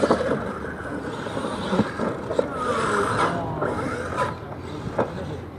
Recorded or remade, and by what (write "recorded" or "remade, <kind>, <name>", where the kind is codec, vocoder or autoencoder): recorded